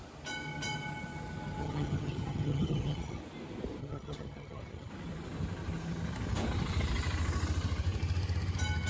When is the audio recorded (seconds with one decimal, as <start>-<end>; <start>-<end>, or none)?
0.0-1.6; 3.2-3.8; 4.9-8.9